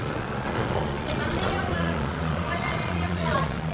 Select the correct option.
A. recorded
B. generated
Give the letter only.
B